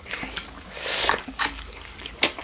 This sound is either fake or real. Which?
fake